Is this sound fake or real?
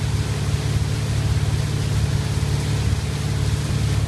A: real